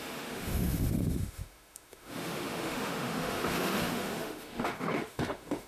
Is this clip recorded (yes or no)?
no